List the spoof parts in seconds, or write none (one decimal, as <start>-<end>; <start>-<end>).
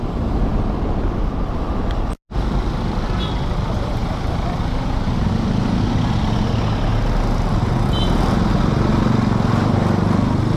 none